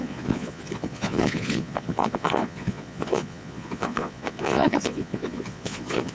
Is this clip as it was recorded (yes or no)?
no